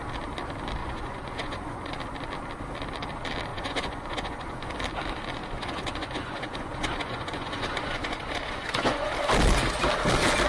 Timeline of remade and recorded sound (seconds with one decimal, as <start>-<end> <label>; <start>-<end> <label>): 0.0-0.8 recorded; 0.8-1.9 remade; 1.9-3.5 recorded; 3.5-4.7 remade; 4.7-5.4 recorded; 5.4-9.1 remade; 9.1-10.5 recorded